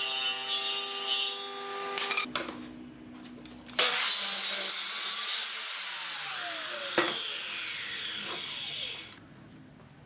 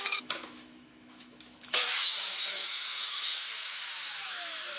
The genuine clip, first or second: first